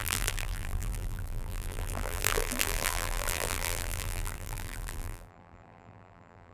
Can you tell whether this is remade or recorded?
remade